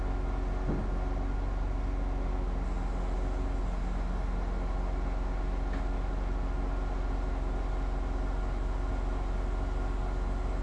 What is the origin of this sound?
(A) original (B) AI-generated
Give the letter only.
A